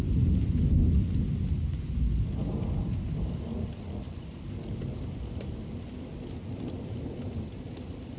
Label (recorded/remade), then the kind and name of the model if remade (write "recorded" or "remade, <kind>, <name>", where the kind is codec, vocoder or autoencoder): recorded